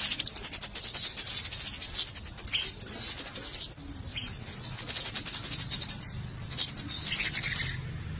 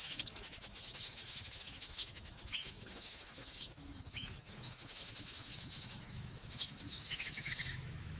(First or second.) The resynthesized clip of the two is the second